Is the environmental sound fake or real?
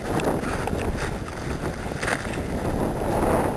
real